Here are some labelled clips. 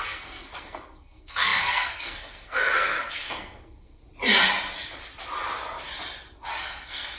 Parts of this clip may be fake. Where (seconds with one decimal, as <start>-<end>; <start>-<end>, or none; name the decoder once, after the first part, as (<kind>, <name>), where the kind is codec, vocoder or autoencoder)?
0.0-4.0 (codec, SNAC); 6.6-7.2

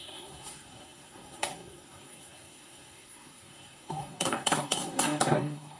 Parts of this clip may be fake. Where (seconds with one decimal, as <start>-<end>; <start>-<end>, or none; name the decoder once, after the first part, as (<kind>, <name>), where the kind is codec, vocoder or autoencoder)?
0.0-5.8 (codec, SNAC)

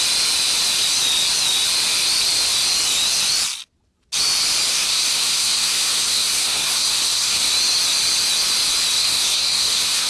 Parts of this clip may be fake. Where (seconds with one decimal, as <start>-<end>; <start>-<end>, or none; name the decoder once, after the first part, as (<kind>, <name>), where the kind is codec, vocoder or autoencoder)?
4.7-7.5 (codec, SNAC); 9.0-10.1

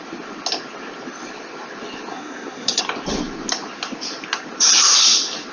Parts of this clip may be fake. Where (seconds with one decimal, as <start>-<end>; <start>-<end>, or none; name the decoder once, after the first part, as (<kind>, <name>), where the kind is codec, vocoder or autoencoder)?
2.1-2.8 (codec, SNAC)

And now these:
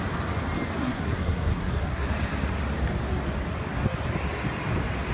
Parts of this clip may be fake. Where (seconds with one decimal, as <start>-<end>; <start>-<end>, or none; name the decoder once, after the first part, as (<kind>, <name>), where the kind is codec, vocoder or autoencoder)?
0.8-2.1 (codec, SNAC)

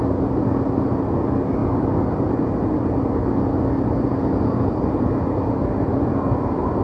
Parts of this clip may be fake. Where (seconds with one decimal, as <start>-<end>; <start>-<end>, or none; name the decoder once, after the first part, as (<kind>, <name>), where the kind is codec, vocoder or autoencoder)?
none

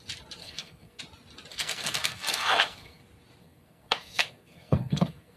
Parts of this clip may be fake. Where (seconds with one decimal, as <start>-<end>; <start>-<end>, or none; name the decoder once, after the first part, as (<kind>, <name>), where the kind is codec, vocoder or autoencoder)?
0.4-1.0 (codec, SNAC); 1.5-3.0; 3.4-5.4

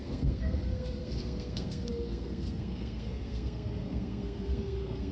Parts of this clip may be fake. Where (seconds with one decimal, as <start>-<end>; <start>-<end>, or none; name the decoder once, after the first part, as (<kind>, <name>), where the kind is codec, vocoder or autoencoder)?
0.0-5.1 (codec, SNAC)